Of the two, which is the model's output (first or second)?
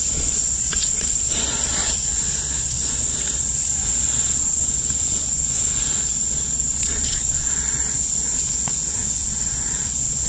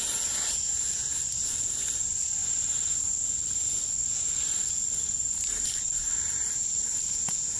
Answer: first